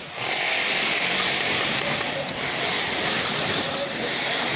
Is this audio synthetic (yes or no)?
yes